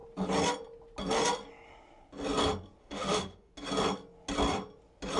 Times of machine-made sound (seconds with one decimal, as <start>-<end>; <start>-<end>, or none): 2.8-3.5